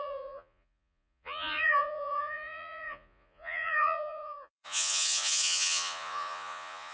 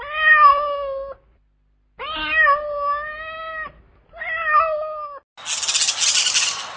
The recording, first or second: second